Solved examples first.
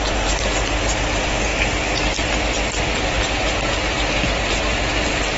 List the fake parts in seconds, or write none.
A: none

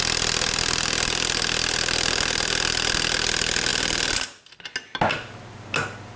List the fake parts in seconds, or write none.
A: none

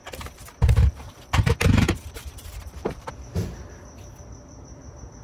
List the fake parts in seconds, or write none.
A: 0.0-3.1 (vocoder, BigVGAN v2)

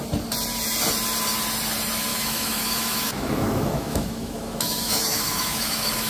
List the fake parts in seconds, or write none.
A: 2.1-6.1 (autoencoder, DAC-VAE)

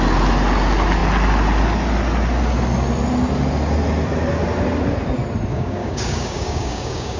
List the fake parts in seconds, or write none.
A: 5.5-7.2 (codec, DAC)